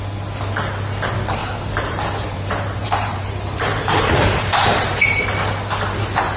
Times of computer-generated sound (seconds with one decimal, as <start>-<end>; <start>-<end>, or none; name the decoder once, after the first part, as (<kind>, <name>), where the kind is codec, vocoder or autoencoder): 1.4-5.2 (vocoder, BigVGAN v2)